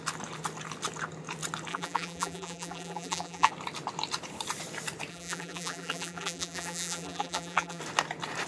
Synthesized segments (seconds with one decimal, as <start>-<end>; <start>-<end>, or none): 1.7-3.5; 5.1-7.8